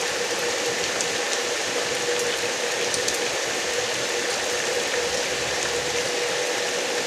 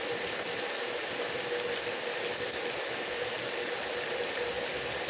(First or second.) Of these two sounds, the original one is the second